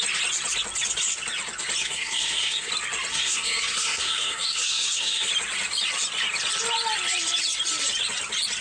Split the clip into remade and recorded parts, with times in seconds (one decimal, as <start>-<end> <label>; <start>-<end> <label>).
0.0-1.8 recorded; 1.8-2.7 remade; 2.7-3.1 recorded; 3.1-5.3 remade; 5.3-8.6 recorded